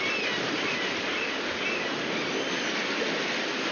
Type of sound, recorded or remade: recorded